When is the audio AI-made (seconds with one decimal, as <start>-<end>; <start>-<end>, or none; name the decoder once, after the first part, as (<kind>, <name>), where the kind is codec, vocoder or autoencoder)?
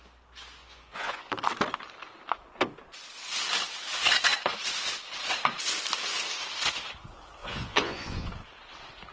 0.6-1.3 (vocoder, Vocos); 7.4-8.3